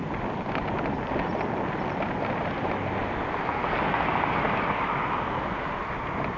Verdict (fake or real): real